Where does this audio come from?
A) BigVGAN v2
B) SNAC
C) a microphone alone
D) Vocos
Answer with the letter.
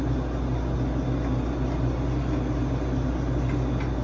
C